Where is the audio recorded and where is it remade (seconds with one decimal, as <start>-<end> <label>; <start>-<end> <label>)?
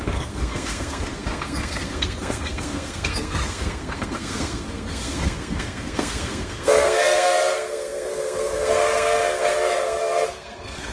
0.0-10.9 remade